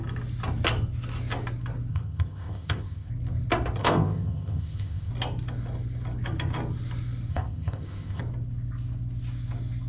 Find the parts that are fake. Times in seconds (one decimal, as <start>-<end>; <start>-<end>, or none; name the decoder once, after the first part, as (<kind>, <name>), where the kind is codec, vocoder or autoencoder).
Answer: 1.9-3.1 (codec, ZipCodec); 3.8-5.1; 7.3-8.2